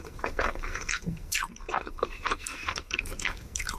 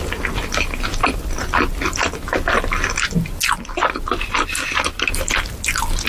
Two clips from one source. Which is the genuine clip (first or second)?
second